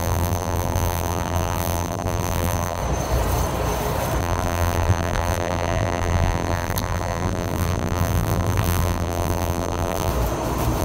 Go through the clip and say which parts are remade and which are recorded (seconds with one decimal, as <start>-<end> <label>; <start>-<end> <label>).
0.0-2.8 remade; 2.8-4.2 recorded; 4.2-10.1 remade; 10.1-10.8 recorded